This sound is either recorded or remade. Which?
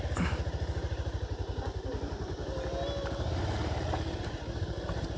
recorded